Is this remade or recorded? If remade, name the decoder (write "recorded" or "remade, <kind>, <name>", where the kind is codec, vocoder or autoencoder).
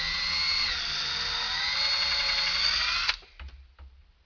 recorded